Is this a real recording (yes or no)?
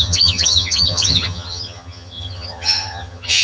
no